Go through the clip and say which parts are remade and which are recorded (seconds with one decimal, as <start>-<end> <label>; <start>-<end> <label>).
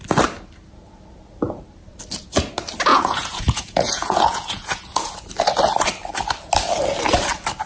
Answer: 0.0-2.9 recorded; 2.9-5.3 remade; 5.3-7.7 recorded